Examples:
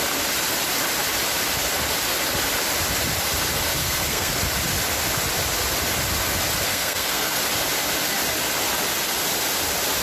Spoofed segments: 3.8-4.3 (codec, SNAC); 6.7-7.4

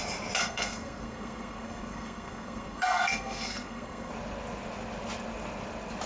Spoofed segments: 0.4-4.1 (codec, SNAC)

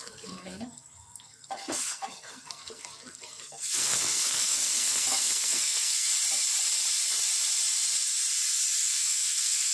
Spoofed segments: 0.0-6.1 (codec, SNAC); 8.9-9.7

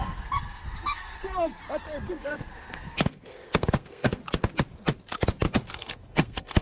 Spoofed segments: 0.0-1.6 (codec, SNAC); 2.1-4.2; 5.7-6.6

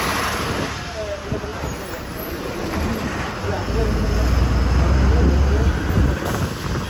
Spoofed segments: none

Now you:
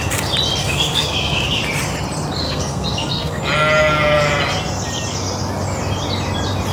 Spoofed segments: 0.6-1.6 (codec, SNAC); 2.4-3.4